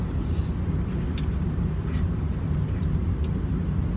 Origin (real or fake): real